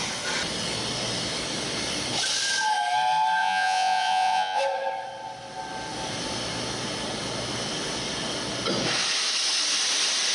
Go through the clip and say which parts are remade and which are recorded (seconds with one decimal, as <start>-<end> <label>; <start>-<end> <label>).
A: 0.0-3.4 recorded; 3.4-4.6 remade; 4.6-10.3 recorded